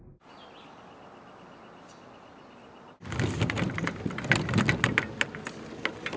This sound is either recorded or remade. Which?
recorded